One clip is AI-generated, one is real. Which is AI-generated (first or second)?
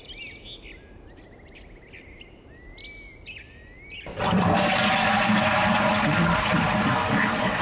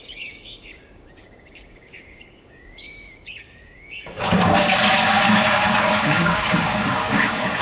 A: second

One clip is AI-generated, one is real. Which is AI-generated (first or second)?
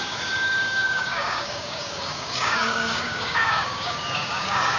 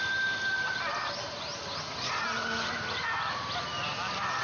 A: first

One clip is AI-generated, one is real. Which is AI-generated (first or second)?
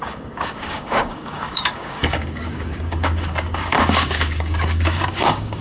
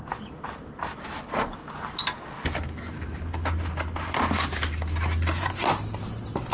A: first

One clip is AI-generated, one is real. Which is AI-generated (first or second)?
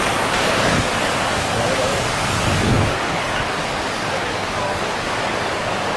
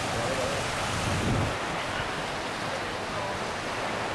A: first